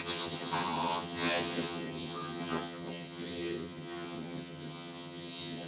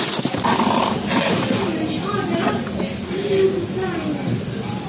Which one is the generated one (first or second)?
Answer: first